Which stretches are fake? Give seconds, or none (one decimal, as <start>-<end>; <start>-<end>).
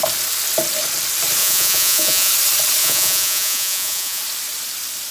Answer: 1.4-2.3; 2.8-4.2